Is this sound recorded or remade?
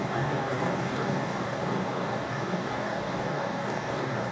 remade